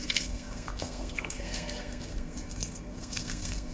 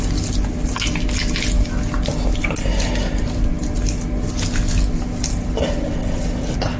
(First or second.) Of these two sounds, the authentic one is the second